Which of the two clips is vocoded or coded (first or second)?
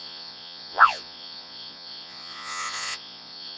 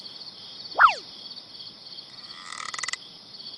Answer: first